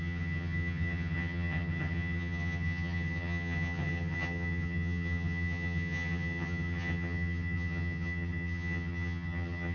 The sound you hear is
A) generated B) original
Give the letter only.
A